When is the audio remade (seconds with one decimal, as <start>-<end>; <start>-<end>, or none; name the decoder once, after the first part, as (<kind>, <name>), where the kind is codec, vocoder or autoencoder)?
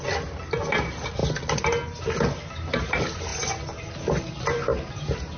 none